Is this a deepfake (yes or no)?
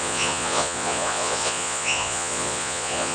yes